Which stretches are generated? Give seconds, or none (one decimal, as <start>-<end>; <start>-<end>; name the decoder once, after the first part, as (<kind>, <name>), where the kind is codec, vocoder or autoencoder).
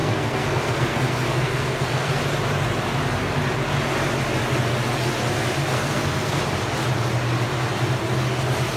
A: 0.0-2.2 (codec, SNAC); 5.7-6.4